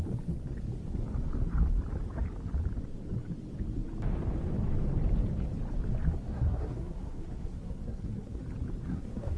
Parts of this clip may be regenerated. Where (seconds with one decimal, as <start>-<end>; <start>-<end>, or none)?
6.3-8.4; 8.9-9.4